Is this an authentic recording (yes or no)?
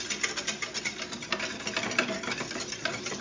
yes